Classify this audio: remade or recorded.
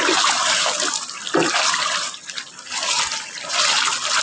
recorded